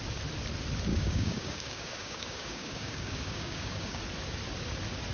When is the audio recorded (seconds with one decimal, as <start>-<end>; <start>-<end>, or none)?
0.0-0.9; 4.0-5.1